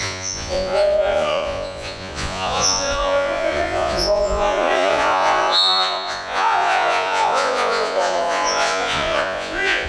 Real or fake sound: fake